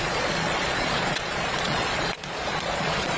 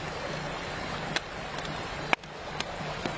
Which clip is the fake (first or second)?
first